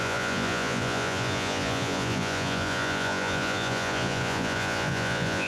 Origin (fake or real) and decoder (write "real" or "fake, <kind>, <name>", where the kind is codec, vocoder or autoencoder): fake, vocoder, Vocos